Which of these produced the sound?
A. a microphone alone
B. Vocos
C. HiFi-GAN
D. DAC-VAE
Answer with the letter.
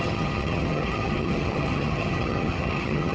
C